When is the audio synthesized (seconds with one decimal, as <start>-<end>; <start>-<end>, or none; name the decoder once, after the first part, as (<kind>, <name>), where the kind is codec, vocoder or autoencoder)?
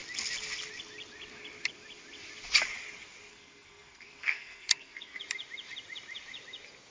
3.3-5.2 (codec, SNAC)